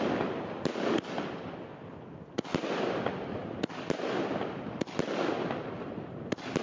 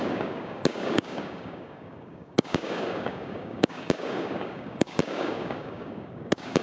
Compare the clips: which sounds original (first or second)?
first